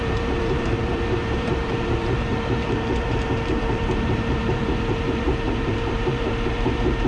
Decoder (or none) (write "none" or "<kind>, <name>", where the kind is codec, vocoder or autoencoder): vocoder, BigVGAN v2